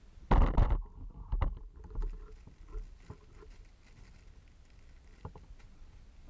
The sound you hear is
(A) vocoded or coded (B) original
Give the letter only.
B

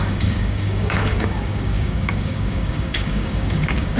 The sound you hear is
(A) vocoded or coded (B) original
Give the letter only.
A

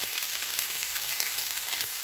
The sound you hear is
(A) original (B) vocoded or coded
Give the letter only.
B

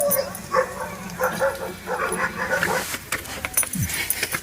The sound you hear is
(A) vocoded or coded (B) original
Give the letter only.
B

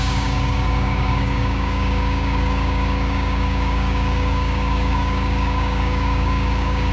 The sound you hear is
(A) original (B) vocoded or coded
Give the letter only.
B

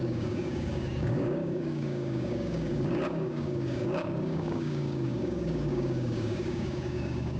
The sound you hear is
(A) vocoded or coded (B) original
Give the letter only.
A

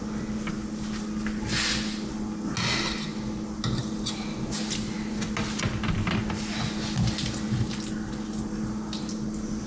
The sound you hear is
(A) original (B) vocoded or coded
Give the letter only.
A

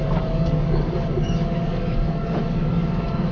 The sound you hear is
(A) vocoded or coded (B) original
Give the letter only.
A